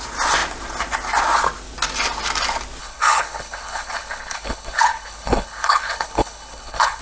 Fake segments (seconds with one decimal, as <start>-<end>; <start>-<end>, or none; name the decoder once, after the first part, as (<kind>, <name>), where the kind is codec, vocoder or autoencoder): 2.8-7.0 (codec, HILCodec)